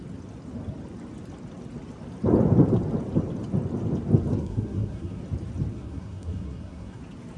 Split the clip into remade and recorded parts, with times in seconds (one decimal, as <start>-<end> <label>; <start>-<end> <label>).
0.0-4.3 recorded; 4.3-5.2 remade; 5.2-5.7 recorded; 5.7-7.0 remade; 7.0-7.4 recorded